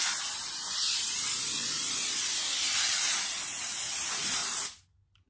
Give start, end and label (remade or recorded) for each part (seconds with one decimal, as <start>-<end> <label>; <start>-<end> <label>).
0.0-5.3 recorded